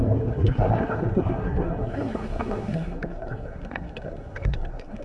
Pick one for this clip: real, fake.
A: fake